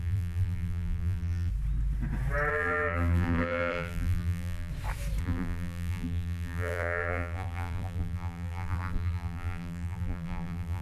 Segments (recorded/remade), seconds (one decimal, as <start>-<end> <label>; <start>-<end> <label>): 0.0-1.5 remade; 1.5-2.5 recorded; 2.5-4.7 remade; 4.7-5.2 recorded; 5.2-10.8 remade